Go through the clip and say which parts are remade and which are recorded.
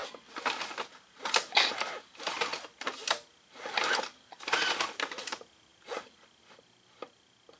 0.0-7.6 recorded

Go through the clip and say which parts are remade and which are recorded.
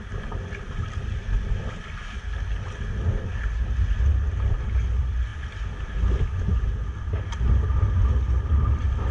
0.0-9.1 recorded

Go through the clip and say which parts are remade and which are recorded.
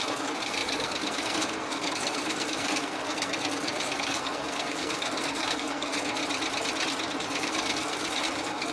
0.0-6.2 remade; 6.2-7.2 recorded; 7.2-8.7 remade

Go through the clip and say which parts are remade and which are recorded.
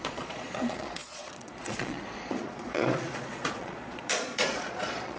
0.0-5.2 remade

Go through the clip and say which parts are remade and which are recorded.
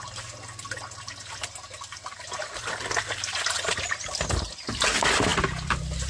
0.0-5.3 recorded; 5.3-6.1 remade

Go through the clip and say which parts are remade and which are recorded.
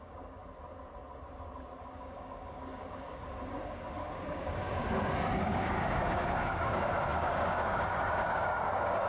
0.0-0.4 remade; 0.4-1.8 recorded; 1.8-4.8 remade; 4.8-5.4 recorded; 5.4-9.1 remade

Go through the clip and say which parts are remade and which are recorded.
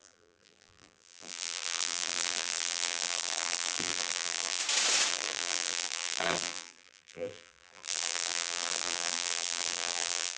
0.0-4.6 remade; 4.6-5.1 recorded; 5.1-10.4 remade